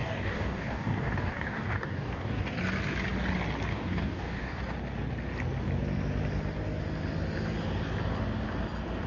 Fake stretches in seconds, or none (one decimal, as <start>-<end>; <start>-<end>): 0.0-2.4; 3.7-4.6